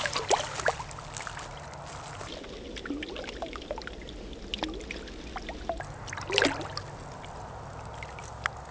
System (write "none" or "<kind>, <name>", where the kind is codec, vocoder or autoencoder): none